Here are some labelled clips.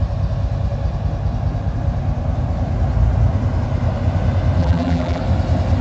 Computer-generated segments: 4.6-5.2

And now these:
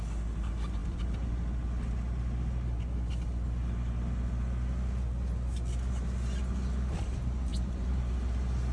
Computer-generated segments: 0.8-1.3; 7.5-8.0

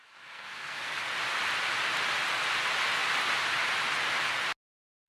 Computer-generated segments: 0.0-1.0

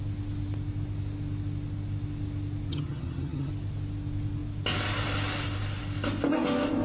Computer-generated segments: 2.7-3.5

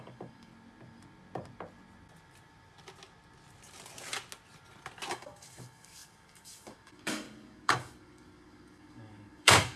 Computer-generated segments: 0.0-0.5; 5.1-9.8